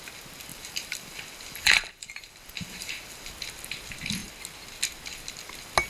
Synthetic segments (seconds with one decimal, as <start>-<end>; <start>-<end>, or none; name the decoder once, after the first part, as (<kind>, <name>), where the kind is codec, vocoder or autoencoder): 0.5-3.3 (vocoder, BigVGAN v2)